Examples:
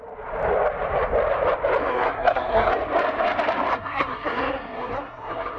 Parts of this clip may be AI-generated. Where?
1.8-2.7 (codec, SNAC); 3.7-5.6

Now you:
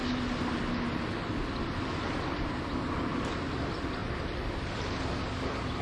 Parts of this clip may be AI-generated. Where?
none

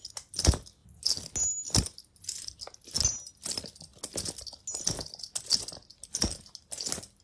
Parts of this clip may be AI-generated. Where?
none

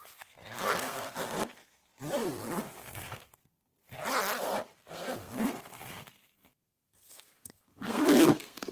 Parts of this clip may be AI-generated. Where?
0.0-1.9 (codec, SNAC); 2.6-3.7; 4.4-8.7